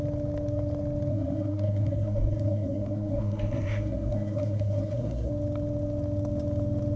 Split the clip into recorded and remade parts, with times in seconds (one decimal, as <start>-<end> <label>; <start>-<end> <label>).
0.0-1.1 recorded; 1.1-5.3 remade; 5.3-7.0 recorded